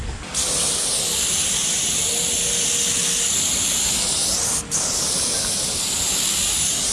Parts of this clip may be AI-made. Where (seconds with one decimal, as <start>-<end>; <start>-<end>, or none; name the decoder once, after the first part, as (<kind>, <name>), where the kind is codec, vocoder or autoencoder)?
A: none